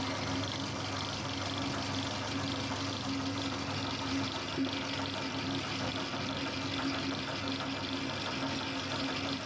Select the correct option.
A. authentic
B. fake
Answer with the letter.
A